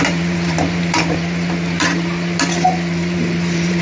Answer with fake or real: fake